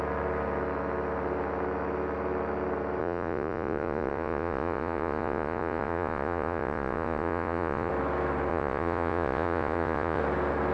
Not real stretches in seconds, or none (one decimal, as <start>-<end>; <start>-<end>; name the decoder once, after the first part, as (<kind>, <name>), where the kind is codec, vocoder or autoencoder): 3.0-7.9 (vocoder, Vocos); 8.5-10.2